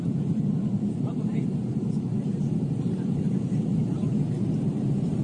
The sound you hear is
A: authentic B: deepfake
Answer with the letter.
B